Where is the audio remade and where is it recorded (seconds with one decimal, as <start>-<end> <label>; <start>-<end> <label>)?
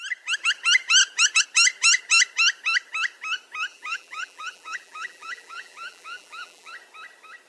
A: 0.0-3.7 recorded; 3.7-6.7 remade; 6.7-7.5 recorded